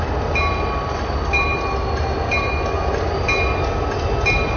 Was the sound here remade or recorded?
recorded